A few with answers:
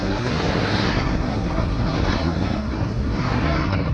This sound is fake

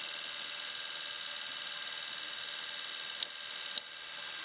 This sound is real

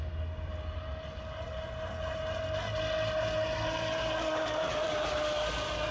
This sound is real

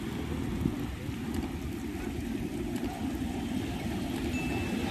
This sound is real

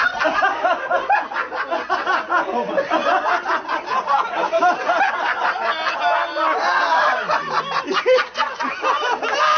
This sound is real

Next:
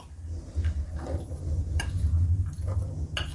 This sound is real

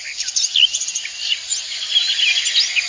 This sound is real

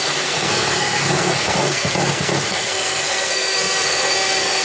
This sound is fake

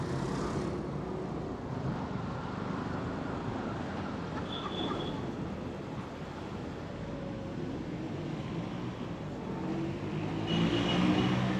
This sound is real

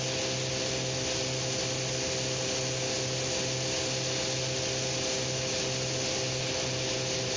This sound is real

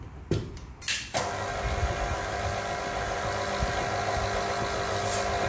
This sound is real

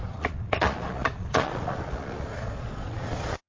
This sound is fake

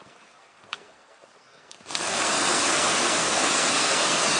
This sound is fake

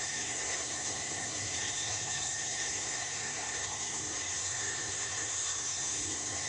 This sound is fake